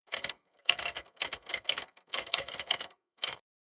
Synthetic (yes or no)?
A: yes